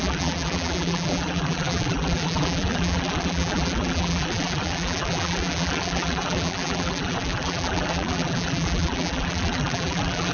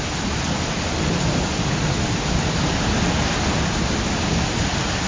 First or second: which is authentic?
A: second